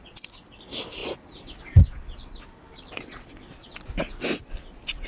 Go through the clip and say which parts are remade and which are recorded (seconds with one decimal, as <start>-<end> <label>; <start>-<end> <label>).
0.0-5.1 recorded